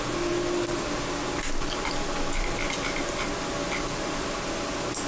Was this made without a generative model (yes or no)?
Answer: yes